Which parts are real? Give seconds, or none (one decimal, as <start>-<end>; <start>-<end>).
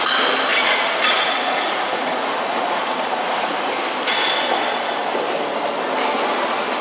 0.0-0.5; 3.8-6.8